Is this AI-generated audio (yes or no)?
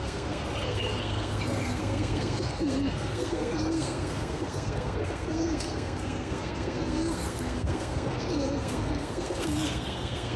yes